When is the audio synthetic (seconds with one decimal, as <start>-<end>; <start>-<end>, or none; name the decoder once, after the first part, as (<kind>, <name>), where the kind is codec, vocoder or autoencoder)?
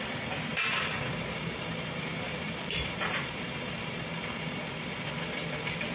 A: 0.5-4.0 (vocoder, BigVGAN v2)